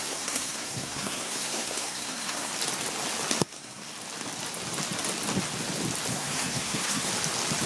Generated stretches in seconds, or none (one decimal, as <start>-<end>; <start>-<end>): 0.0-2.5; 3.4-3.9; 6.1-7.1